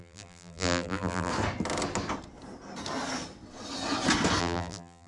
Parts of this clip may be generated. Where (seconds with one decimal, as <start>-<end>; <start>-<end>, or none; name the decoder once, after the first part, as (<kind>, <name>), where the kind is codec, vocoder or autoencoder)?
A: 0.0-1.3 (vocoder, BigVGAN v2); 4.4-5.1